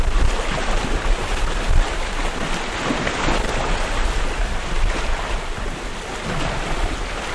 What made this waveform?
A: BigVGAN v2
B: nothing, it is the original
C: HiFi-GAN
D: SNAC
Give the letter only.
B